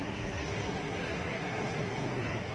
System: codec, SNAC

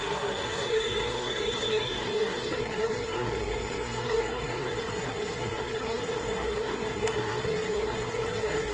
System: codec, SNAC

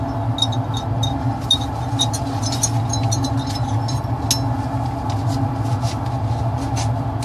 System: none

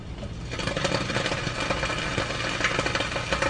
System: none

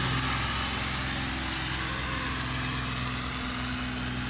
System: none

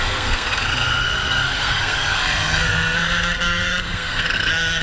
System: codec, SNAC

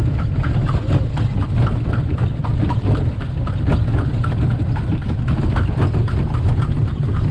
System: none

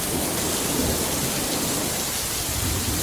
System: none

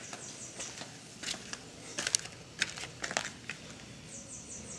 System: none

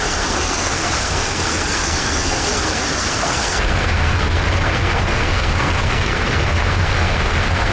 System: codec, SNAC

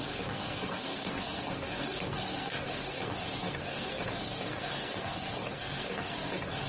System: codec, SNAC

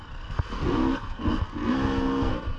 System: codec, SNAC